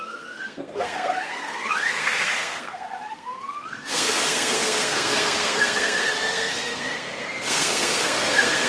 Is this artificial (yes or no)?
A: yes